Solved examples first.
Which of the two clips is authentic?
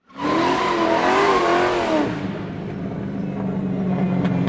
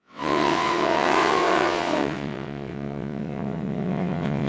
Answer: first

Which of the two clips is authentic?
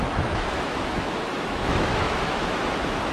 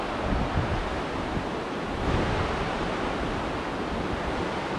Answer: second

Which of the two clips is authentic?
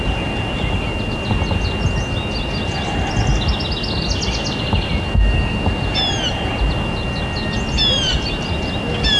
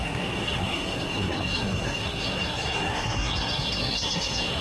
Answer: first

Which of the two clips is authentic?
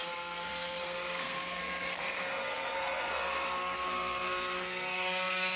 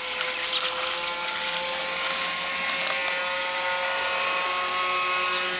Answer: second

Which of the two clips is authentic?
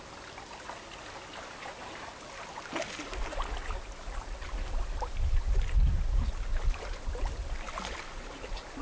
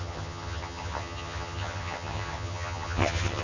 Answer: first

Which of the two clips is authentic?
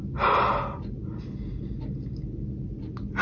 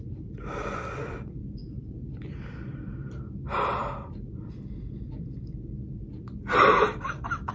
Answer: first